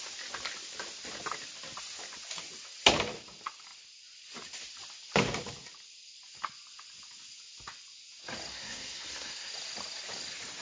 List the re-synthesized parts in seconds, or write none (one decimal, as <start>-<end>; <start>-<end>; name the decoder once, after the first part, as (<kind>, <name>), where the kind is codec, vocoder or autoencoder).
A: 8.5-9.5 (codec, SNAC)